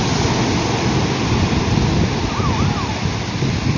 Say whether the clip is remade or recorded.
recorded